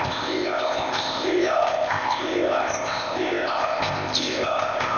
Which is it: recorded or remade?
remade